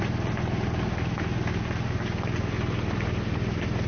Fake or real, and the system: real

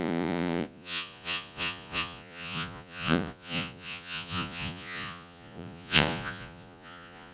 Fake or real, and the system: fake, vocoder, Vocos